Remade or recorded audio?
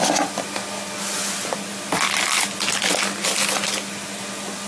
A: recorded